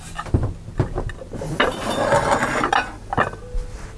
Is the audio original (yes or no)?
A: yes